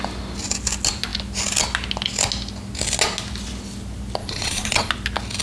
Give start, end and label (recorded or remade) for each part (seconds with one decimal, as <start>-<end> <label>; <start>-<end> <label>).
0.0-4.2 recorded; 4.2-4.9 remade; 4.9-5.4 recorded

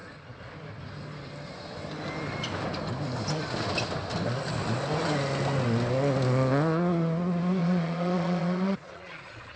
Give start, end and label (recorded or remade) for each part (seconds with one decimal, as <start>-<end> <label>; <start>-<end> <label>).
0.0-7.6 recorded; 7.6-9.6 remade

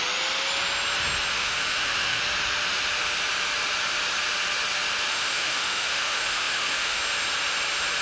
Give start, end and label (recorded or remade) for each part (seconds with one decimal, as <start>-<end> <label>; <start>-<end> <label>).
0.0-1.4 recorded; 1.4-2.2 remade; 2.2-5.1 recorded; 5.1-7.0 remade; 7.0-8.0 recorded

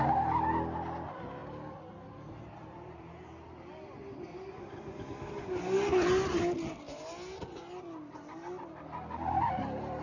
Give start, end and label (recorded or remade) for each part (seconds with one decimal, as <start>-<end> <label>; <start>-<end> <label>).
0.0-10.0 recorded

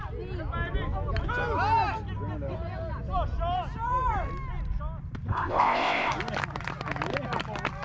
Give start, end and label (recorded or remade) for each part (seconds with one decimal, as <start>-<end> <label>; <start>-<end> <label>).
0.0-5.3 recorded; 5.3-6.1 remade; 6.1-7.8 recorded

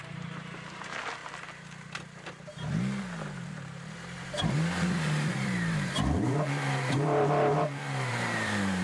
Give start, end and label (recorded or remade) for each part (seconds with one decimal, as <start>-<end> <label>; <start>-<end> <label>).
0.0-1.2 remade; 1.2-3.0 recorded; 3.0-8.8 remade